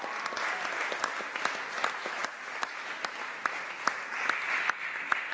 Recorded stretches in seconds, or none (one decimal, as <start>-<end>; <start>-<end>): 0.0-5.3